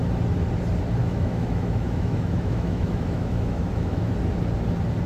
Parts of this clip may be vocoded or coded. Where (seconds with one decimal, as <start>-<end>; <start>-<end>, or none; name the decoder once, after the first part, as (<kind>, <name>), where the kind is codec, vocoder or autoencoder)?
1.0-4.1 (autoencoder, DAC-VAE)